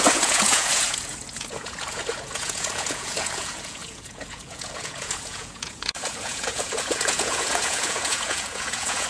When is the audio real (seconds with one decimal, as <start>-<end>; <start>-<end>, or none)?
none